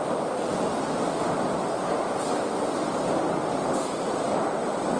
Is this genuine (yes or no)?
yes